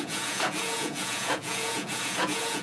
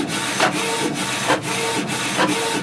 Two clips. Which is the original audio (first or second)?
second